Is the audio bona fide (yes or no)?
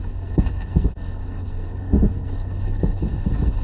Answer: no